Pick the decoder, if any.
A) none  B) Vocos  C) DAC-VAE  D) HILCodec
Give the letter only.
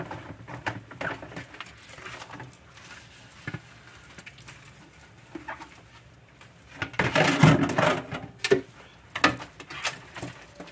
A